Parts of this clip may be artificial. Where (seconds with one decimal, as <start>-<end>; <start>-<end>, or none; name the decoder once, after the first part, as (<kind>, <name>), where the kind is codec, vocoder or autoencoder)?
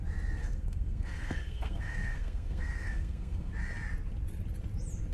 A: 0.4-3.5 (codec, SNAC)